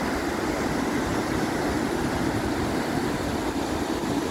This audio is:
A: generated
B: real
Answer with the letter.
B